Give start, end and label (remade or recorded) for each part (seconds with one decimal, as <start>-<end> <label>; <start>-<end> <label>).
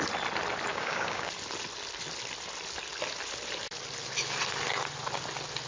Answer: 0.0-0.7 recorded; 0.7-1.3 remade; 1.3-5.7 recorded